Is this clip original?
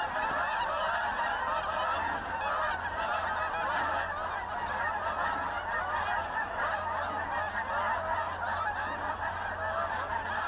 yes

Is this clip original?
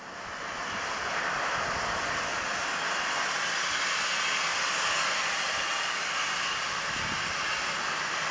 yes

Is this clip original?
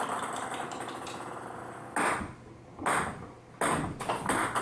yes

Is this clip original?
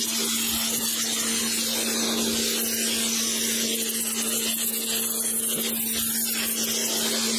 yes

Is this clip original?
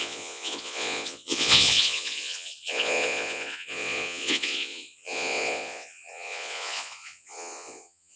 no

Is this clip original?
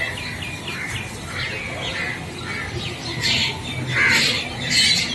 yes